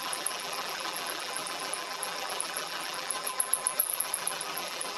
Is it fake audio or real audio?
fake